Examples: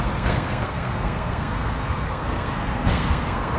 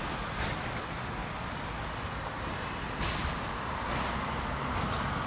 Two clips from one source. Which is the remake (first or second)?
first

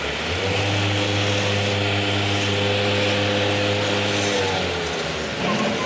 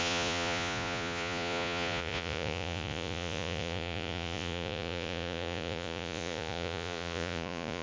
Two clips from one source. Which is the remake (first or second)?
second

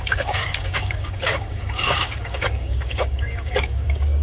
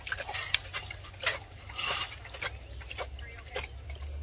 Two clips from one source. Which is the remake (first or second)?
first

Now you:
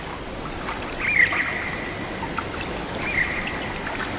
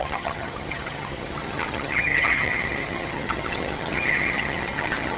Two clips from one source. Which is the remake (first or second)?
second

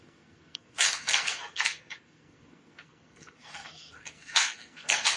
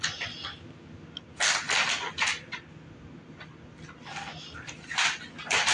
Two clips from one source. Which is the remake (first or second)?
first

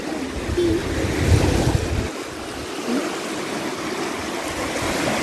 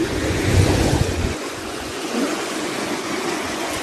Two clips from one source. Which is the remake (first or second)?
second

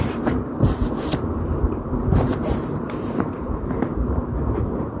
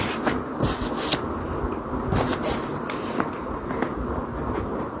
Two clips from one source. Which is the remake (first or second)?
first